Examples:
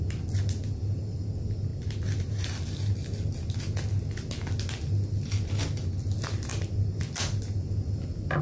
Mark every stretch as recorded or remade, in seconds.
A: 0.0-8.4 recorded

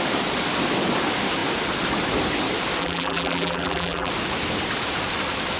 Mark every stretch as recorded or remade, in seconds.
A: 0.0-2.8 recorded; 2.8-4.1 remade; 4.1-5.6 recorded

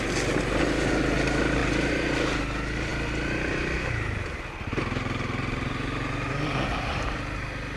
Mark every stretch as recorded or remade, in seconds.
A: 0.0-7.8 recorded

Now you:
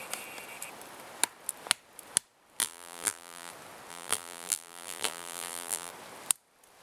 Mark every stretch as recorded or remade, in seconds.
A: 0.0-2.6 recorded; 2.6-3.5 remade; 3.5-3.9 recorded; 3.9-5.9 remade; 5.9-6.8 recorded